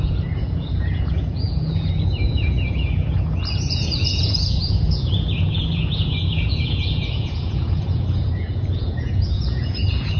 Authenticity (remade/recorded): remade